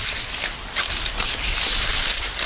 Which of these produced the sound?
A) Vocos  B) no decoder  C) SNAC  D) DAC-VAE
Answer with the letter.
B